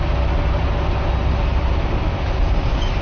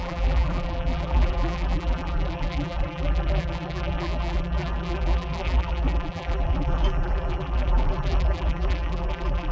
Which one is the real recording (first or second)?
first